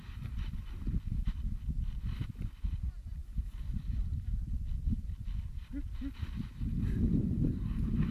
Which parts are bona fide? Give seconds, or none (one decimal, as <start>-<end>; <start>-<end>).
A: none